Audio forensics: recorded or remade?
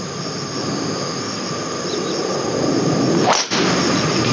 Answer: recorded